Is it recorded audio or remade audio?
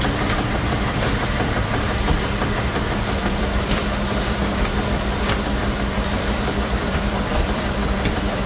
remade